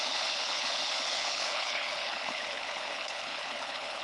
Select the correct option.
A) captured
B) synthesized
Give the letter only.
B